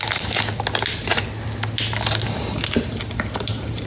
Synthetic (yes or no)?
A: no